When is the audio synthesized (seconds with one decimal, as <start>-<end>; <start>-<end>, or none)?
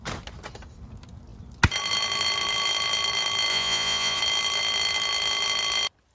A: 3.5-4.2